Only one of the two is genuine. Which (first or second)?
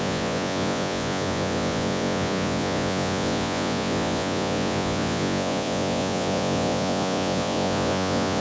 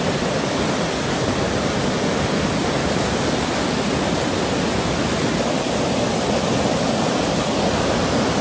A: second